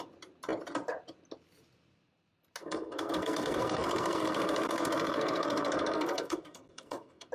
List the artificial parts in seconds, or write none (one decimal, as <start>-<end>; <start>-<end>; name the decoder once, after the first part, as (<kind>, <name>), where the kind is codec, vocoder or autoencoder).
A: 2.6-7.3 (codec, SNAC)